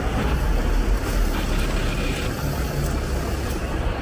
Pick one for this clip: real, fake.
real